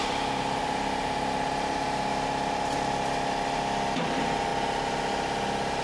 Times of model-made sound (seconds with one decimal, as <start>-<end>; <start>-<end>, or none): 0.0-2.7